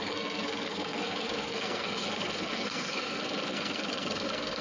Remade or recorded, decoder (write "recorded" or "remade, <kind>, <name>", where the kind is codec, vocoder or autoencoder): remade, codec, SNAC